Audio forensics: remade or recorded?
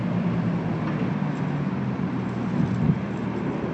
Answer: recorded